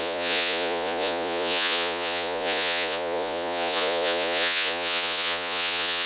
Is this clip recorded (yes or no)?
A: no